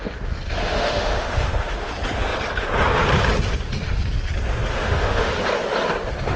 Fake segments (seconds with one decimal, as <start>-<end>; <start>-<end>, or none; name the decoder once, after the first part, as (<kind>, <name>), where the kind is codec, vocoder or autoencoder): 0.6-1.9 (autoencoder, DAC-VAE); 4.7-5.3